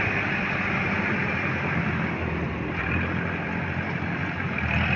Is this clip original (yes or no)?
yes